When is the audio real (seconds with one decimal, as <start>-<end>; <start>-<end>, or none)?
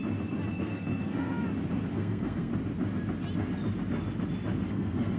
0.0-0.5; 1.3-1.9; 2.5-4.7